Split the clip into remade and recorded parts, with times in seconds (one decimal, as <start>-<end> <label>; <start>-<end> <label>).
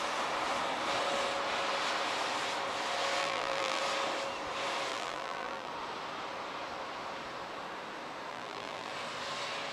0.0-3.2 recorded; 3.2-3.8 remade; 3.8-4.9 recorded; 4.9-5.7 remade; 5.7-8.3 recorded; 8.3-8.9 remade; 8.9-9.7 recorded